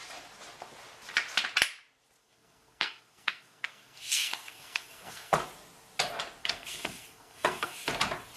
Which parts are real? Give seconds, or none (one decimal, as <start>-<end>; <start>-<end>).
0.0-2.2; 5.4-6.4; 7.9-8.4

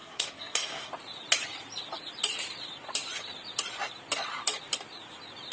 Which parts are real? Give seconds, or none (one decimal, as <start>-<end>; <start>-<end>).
0.9-5.5

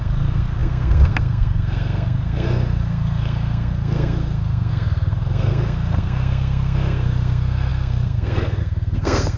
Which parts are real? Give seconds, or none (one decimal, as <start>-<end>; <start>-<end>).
none

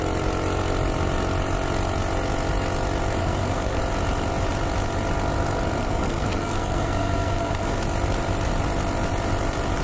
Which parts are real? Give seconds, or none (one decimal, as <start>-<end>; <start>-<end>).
0.0-3.2; 3.8-5.8; 7.8-9.8

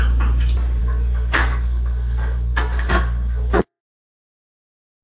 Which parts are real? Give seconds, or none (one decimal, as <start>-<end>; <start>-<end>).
0.0-0.8; 3.8-5.0

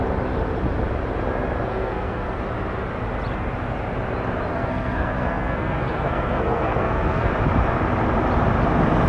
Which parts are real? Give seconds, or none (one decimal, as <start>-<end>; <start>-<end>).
0.0-1.7; 2.4-4.5; 7.3-9.1